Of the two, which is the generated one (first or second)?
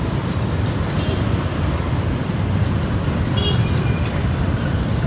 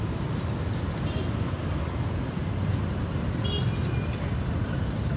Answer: first